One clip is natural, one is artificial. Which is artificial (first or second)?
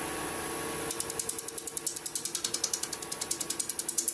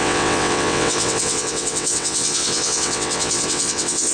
second